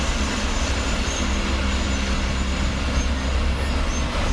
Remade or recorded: recorded